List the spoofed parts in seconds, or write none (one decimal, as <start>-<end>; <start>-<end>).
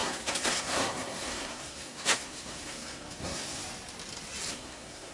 0.0-3.6; 4.5-5.1